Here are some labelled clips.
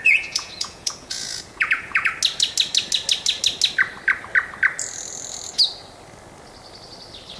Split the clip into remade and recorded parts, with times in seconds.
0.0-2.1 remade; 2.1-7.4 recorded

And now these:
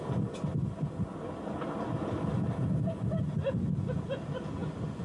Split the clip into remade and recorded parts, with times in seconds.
0.0-5.0 recorded